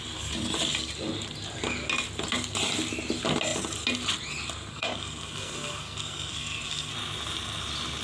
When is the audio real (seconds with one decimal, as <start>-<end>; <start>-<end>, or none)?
0.0-4.7; 6.9-8.0